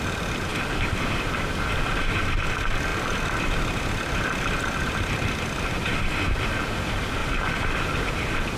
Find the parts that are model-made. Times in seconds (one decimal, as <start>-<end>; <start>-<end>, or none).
2.9-6.6; 7.2-8.0